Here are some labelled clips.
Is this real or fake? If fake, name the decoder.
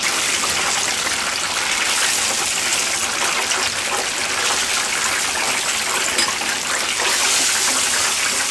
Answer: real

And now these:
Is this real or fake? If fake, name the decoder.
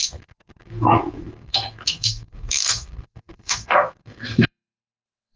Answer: fake, codec, SNAC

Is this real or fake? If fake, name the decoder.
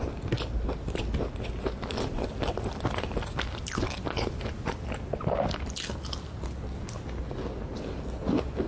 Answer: real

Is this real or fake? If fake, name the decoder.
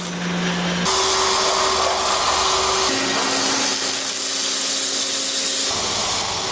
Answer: real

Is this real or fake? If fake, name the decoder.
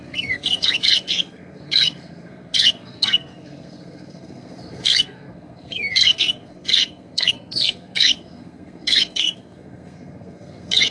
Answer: fake, codec, SNAC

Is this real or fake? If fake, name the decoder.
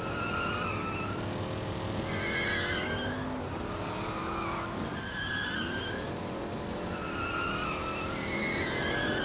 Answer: real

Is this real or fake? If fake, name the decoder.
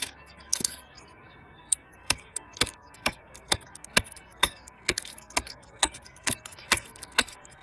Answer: fake, codec, SNAC